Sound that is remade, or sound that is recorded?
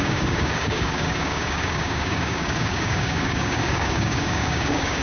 remade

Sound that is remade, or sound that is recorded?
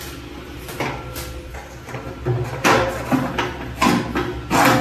recorded